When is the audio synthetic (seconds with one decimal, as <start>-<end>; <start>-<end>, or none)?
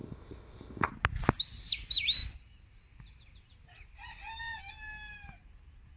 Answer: 0.0-0.9